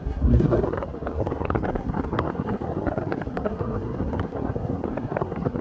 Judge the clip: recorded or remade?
remade